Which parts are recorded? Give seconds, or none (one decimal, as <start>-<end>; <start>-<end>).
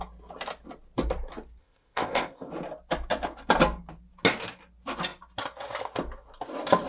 0.0-1.6; 2.5-6.9